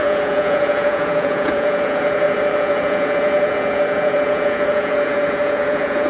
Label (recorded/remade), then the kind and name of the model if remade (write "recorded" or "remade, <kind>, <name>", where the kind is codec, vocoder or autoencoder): remade, vocoder, Vocos